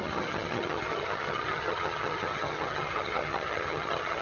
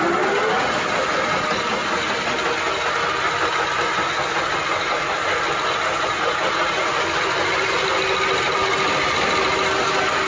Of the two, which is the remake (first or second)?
first